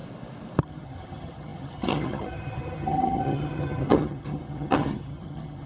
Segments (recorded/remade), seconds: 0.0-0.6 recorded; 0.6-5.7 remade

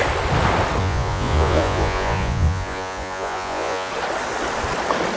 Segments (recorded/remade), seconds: 0.0-0.8 recorded; 0.8-3.9 remade; 3.9-5.2 recorded

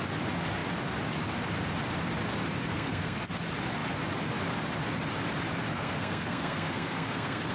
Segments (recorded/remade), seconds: 0.0-2.7 recorded; 2.7-3.2 remade; 3.2-5.7 recorded; 5.7-7.5 remade

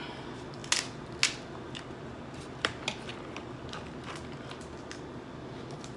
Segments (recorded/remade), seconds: 0.0-6.0 recorded

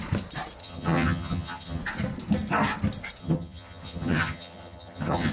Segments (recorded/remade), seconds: 0.0-0.6 recorded; 0.6-1.8 remade; 1.8-3.2 recorded; 3.2-5.3 remade